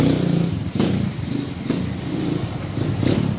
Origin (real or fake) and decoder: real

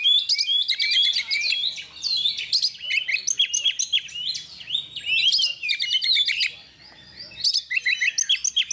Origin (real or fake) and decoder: real